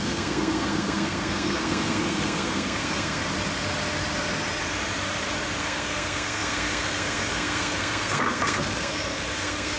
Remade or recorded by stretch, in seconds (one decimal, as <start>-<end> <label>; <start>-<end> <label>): 0.0-3.2 remade; 3.2-5.6 recorded; 5.6-9.8 remade

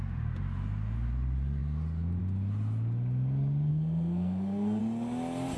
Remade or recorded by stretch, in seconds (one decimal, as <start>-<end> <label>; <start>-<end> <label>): 0.0-3.7 recorded; 3.7-4.8 remade; 4.8-5.6 recorded

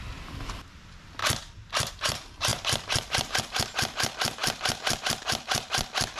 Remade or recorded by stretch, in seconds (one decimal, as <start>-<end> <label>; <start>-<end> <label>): 0.0-6.2 recorded

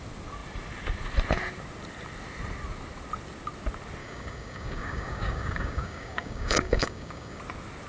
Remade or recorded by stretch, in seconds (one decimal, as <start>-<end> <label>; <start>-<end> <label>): 0.0-4.0 recorded; 4.0-7.4 remade; 7.4-7.9 recorded

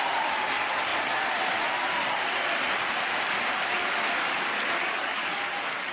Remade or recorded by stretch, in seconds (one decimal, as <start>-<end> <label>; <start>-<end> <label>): 0.0-4.8 recorded; 4.8-5.4 remade; 5.4-5.9 recorded